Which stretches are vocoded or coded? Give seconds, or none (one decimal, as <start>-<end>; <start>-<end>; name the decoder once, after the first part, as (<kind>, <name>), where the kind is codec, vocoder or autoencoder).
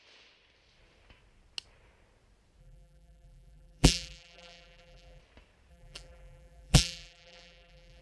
2.6-5.2 (vocoder, BigVGAN v2); 5.7-8.0